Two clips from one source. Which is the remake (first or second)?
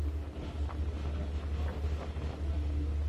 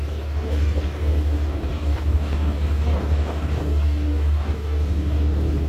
second